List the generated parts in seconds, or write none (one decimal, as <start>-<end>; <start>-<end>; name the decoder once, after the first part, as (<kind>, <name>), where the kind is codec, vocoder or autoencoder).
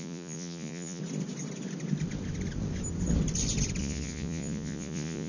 0.0-1.0 (vocoder, Vocos); 3.8-5.3